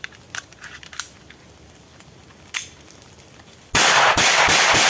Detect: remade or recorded recorded